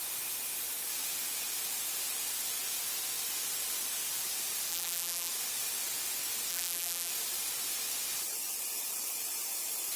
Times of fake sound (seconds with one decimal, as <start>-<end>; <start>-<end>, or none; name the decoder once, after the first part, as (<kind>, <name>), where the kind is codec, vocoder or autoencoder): 4.7-5.3 (vocoder, BigVGAN v2); 6.5-7.1